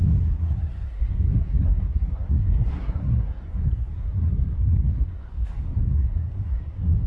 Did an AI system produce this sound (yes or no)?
yes